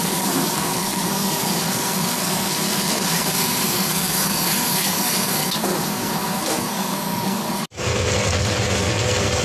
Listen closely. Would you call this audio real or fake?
fake